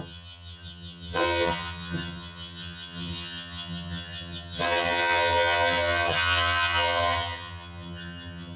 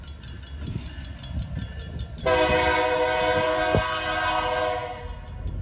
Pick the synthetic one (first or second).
first